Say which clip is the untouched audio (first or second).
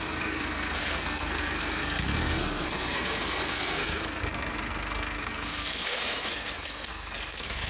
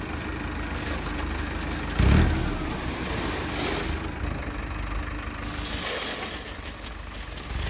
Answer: second